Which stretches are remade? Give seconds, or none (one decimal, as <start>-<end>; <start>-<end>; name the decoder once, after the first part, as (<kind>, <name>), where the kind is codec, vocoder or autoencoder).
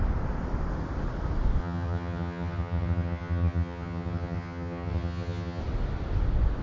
1.6-5.6 (vocoder, HiFi-GAN)